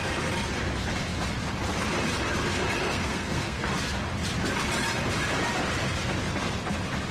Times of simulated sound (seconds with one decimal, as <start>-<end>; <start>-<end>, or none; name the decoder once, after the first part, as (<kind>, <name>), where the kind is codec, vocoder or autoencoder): 2.8-3.7 (codec, SNAC)